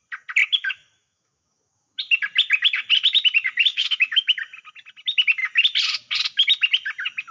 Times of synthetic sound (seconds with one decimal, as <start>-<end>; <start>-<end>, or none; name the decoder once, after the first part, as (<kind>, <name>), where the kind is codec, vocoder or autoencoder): 0.4-2.0 (autoencoder, DAC-VAE); 3.7-4.4